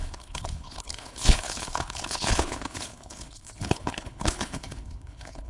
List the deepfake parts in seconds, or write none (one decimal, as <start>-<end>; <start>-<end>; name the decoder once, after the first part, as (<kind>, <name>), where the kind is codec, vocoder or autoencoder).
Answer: 0.0-5.5 (codec, HILCodec)

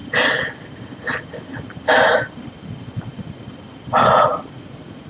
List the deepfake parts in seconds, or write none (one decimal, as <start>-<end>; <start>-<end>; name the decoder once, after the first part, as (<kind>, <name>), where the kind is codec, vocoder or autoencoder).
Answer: 4.1-5.1 (vocoder, Vocos)

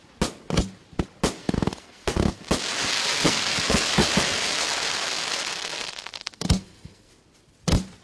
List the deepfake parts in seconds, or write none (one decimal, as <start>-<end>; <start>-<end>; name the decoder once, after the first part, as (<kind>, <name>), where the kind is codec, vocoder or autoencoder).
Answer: 1.4-2.4 (codec, SNAC); 2.9-7.1

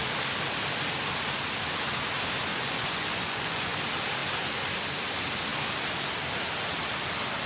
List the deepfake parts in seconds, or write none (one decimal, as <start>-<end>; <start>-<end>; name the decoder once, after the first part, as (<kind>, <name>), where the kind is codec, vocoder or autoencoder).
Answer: 2.5-3.8 (vocoder, Vocos)